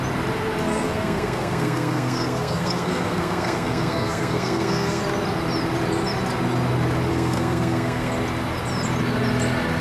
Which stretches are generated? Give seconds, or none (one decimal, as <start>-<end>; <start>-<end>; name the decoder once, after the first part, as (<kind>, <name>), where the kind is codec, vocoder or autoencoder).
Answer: 0.7-5.0 (codec, SNAC); 7.1-8.1